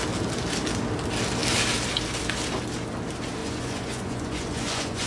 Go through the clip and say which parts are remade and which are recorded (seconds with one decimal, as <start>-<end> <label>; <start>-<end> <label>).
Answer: 0.0-3.4 recorded; 3.4-5.1 remade